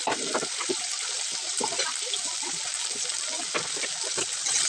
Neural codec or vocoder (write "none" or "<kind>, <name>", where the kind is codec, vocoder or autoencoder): none